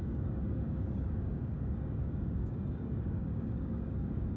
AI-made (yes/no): yes